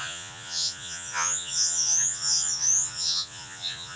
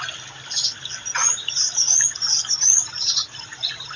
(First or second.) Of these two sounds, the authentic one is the second